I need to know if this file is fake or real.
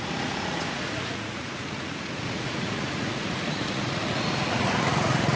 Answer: fake